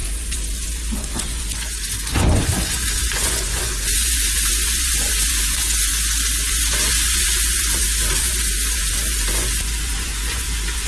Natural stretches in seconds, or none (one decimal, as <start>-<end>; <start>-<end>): 5.9-6.5